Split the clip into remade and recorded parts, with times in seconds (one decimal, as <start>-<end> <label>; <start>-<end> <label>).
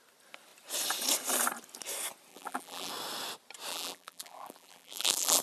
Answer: 0.0-2.3 recorded; 2.3-2.9 remade; 2.9-3.7 recorded; 3.7-5.4 remade